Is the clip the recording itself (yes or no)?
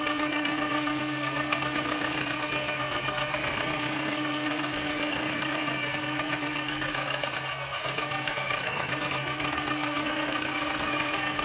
no